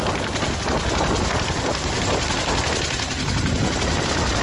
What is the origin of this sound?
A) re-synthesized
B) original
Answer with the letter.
B